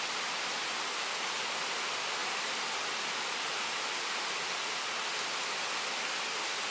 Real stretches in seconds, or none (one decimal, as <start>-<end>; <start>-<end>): 0.0-6.7